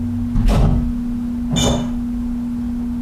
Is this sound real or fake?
real